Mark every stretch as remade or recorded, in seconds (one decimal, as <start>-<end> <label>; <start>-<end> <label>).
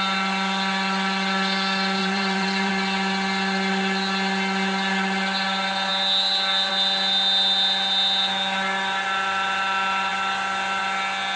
0.0-2.0 recorded; 2.0-2.7 remade; 2.7-11.4 recorded